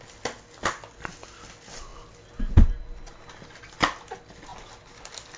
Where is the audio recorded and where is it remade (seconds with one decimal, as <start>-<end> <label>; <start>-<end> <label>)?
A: 0.0-5.4 recorded